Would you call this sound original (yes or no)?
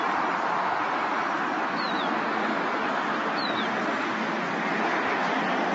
yes